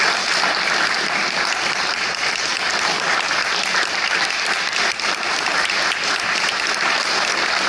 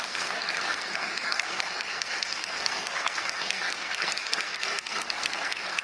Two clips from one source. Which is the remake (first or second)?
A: second